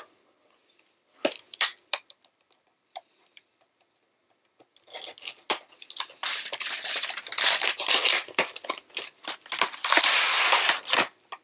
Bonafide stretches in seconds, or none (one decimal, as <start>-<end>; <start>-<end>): 0.0-0.6; 3.8-11.4